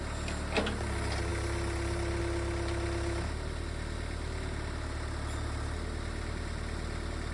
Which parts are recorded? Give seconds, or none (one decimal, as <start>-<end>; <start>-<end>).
0.0-7.3